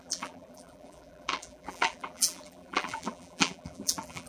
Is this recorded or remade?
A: remade